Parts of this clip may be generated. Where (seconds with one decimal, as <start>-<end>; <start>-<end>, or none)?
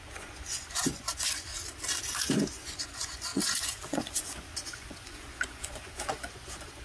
0.0-1.5; 2.1-6.8